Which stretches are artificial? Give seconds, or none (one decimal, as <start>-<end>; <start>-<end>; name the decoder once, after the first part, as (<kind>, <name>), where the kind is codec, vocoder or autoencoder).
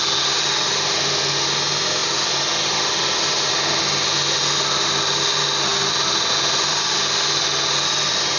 none